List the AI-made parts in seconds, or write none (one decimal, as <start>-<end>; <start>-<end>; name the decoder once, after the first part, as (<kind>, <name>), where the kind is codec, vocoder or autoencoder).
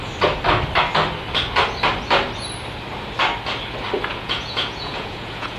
4.1-5.6 (vocoder, Vocos)